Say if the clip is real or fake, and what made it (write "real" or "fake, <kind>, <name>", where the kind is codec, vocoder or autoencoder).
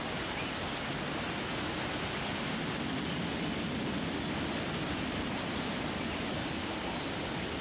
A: real